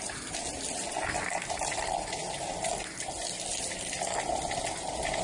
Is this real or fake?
real